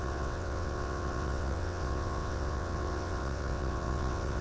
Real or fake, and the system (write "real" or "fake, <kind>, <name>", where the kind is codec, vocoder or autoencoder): fake, vocoder, WaveNeXt